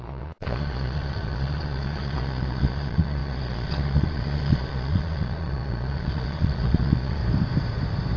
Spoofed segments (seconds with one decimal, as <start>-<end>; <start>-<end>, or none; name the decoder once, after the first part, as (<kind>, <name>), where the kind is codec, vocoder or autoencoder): 0.0-7.2 (vocoder, Vocos)